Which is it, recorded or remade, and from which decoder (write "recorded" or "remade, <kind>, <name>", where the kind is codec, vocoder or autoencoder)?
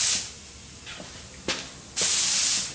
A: recorded